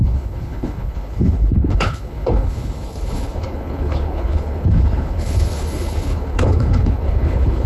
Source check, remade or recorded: remade